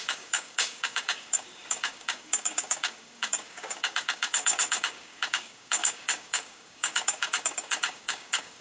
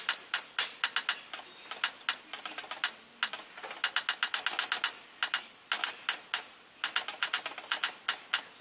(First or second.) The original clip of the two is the second